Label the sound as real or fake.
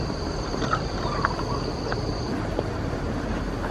real